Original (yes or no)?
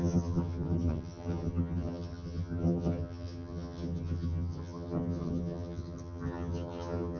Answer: no